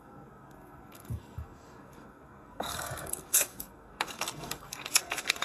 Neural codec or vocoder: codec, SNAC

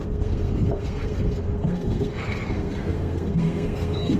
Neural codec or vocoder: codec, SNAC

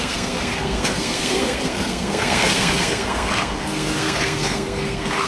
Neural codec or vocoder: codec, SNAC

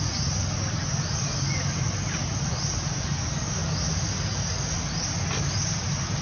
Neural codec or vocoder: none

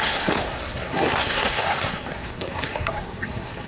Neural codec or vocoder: codec, SNAC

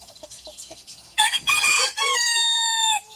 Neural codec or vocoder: codec, SNAC